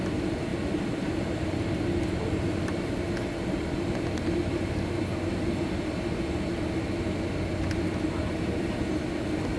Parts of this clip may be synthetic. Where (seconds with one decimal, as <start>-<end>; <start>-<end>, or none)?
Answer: 0.5-1.1